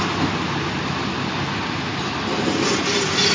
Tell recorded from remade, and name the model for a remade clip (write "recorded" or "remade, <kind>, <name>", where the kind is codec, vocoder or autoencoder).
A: recorded